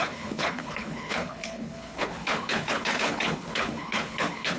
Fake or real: fake